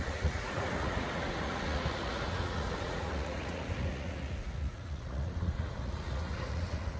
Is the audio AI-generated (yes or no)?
yes